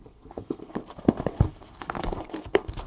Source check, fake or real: fake